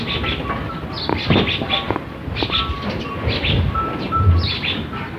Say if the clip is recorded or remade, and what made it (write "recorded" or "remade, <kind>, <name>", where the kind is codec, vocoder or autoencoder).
recorded